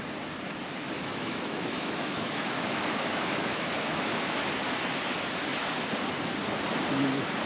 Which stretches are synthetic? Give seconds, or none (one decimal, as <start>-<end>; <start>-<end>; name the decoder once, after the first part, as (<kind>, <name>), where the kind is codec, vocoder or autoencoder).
1.0-4.4 (autoencoder, DAC-VAE)